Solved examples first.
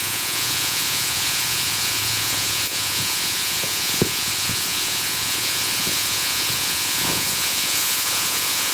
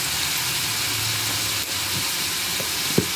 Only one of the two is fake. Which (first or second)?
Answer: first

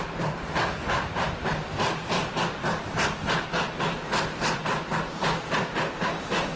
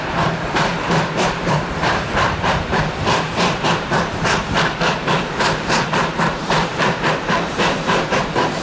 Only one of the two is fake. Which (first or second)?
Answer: second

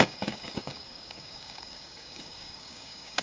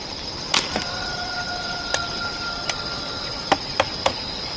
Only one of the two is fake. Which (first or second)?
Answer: first